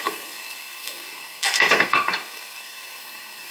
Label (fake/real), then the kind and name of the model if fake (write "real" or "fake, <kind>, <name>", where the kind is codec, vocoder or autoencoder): fake, codec, SNAC